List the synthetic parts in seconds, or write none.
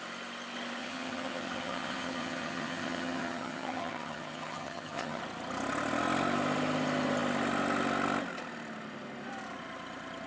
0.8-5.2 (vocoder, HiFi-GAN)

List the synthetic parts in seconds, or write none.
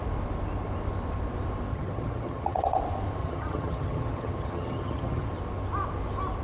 1.7-2.8 (vocoder, HiFi-GAN); 3.2-5.3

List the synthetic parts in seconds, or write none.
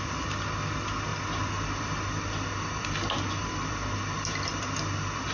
none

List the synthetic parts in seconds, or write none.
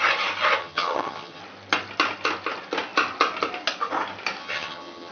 0.6-1.4 (vocoder, HiFi-GAN); 4.4-5.1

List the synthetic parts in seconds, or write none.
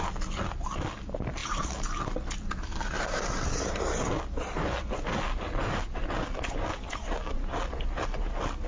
none